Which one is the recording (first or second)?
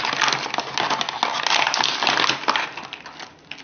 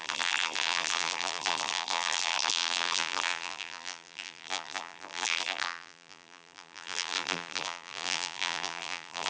first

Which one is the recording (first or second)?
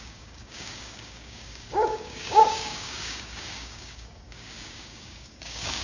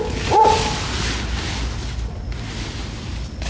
second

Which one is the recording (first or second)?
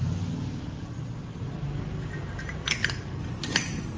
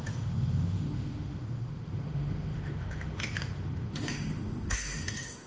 first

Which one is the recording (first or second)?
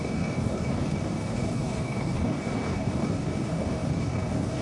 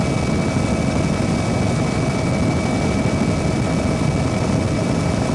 second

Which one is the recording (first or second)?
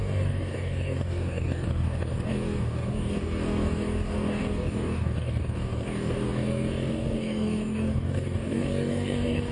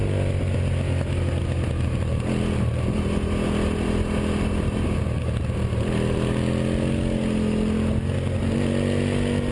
second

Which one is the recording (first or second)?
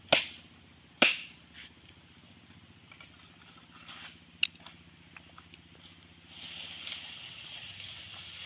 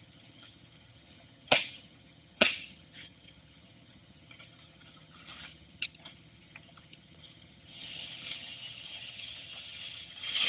first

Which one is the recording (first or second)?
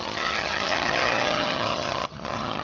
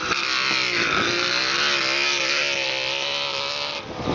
second